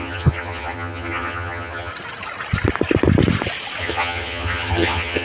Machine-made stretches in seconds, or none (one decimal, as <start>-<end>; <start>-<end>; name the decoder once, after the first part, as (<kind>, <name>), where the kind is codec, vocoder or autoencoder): 0.0-1.9 (vocoder, HiFi-GAN); 3.8-5.2